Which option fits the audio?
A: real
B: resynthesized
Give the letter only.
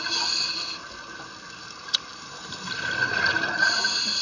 A